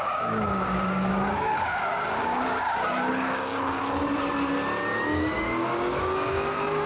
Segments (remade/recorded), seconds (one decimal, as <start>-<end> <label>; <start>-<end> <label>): 0.0-3.8 remade; 3.8-4.9 recorded; 4.9-6.9 remade